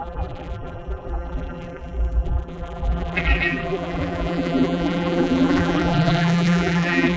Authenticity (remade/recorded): remade